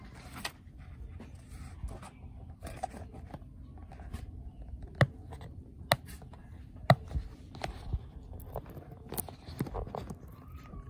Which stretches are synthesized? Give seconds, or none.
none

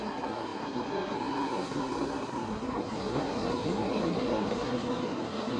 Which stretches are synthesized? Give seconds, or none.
0.0-5.6 (codec, SNAC)

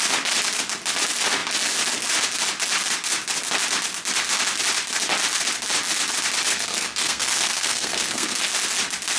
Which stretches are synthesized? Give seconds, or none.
6.5-8.4 (codec, SNAC)